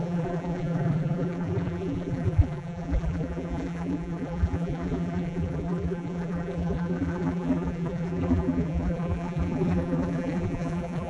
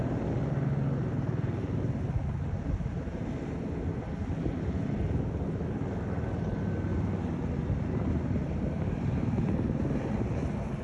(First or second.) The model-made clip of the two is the first